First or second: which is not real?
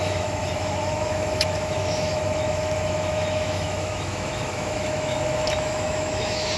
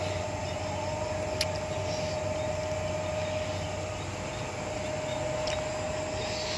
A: first